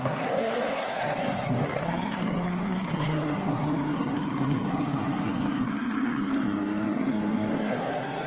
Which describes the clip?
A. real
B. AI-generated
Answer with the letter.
B